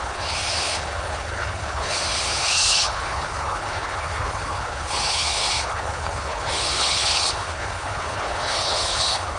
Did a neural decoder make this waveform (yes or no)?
yes